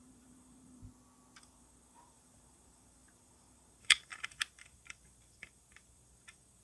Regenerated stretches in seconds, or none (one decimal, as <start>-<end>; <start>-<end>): 0.0-0.8; 1.4-6.6